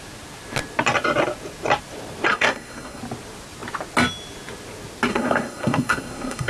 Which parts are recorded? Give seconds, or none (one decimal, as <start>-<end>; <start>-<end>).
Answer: 0.0-2.3; 3.0-5.1